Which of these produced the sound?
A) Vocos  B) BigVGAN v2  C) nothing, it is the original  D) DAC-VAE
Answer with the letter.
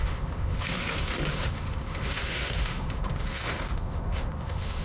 D